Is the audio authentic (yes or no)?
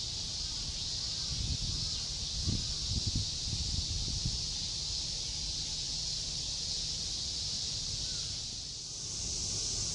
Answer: yes